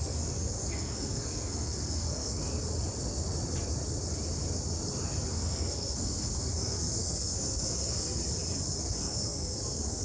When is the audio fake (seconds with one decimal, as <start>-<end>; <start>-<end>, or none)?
0.0-2.4; 5.3-8.2; 8.8-10.0